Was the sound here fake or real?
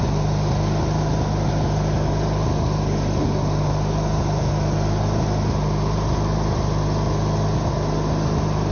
real